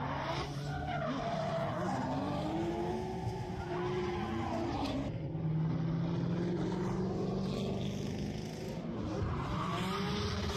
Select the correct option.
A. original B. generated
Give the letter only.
A